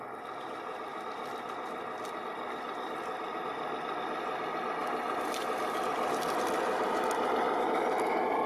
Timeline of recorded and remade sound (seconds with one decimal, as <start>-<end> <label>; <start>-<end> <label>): 0.0-8.5 recorded